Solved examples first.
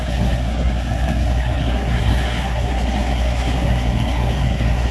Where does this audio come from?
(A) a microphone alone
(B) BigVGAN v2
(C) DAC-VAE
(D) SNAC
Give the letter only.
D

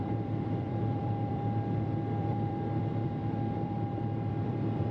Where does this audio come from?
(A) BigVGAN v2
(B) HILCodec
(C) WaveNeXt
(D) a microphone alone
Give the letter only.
A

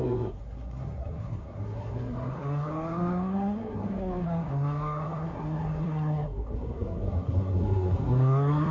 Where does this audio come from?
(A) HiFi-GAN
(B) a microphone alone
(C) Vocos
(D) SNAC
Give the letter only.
D